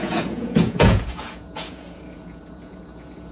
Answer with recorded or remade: remade